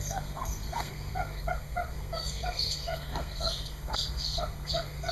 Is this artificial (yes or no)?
yes